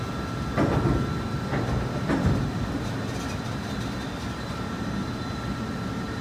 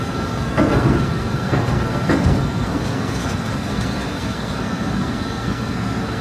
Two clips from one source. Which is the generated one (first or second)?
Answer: second